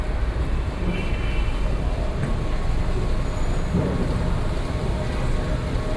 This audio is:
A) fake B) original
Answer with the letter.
B